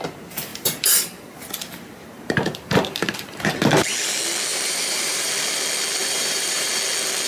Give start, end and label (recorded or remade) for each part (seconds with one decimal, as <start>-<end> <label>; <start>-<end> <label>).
0.0-0.5 recorded; 0.5-3.5 remade; 3.5-4.5 recorded; 4.5-5.3 remade; 5.3-6.0 recorded; 6.0-6.7 remade; 6.7-7.3 recorded